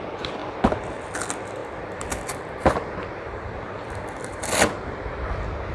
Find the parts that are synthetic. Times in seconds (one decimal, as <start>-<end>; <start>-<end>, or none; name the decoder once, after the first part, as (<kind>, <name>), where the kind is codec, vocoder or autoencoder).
0.0-5.7 (vocoder, BigVGAN v2)